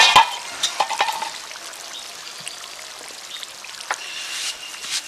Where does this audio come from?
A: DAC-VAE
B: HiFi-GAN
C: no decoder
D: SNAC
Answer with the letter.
C